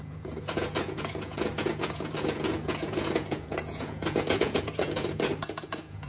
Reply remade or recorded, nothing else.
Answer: remade